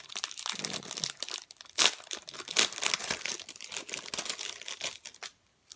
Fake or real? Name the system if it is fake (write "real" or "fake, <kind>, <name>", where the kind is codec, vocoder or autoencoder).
real